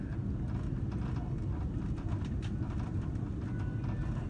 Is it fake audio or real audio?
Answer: real